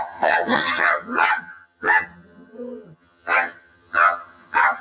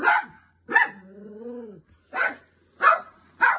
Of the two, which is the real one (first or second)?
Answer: second